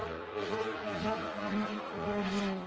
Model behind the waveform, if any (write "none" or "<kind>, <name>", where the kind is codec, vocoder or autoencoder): vocoder, Vocos